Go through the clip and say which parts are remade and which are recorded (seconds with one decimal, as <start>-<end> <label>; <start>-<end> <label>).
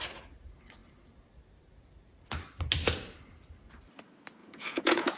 0.0-4.4 recorded; 4.4-5.2 remade